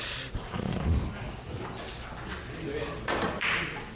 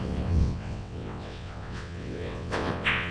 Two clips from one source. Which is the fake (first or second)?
second